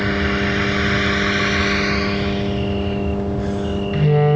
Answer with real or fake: real